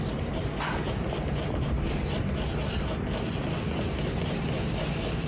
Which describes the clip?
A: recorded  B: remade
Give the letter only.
A